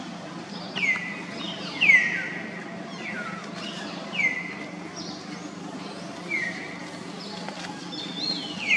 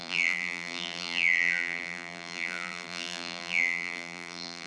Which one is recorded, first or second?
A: first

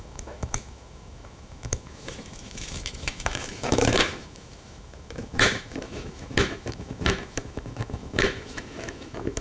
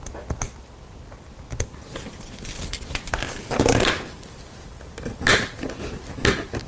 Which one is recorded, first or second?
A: second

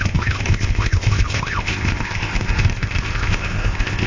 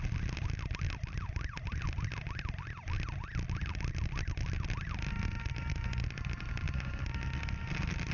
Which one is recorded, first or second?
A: second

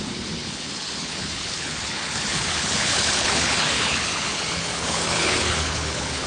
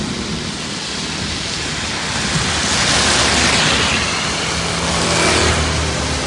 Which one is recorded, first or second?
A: second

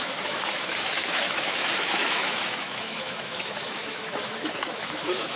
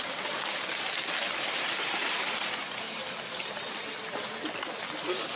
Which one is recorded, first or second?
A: second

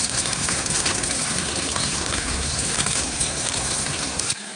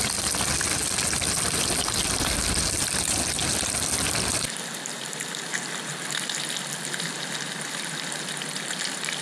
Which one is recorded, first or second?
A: second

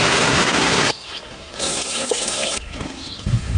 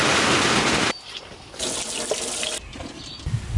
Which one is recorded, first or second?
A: second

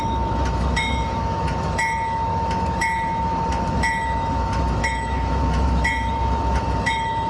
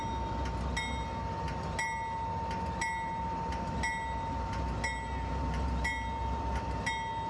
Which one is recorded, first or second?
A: second